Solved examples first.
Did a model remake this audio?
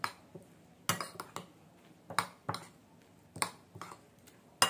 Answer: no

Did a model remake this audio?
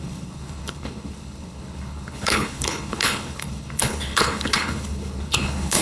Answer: yes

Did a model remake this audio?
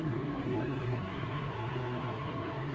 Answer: yes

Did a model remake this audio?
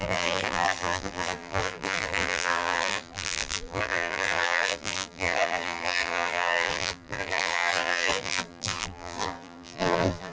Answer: yes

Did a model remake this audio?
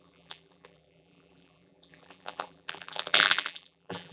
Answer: yes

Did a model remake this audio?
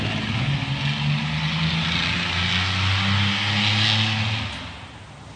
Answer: no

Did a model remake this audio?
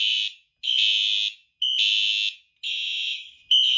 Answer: no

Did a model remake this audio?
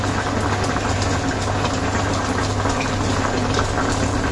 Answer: no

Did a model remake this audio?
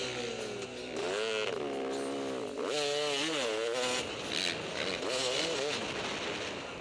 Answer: no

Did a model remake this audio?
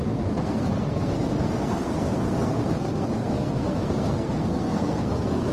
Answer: yes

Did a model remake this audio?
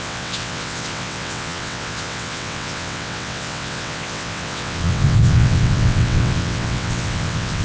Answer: yes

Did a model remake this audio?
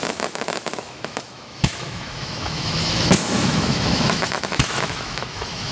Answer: yes